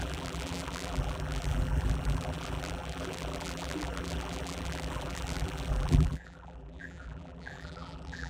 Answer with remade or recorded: remade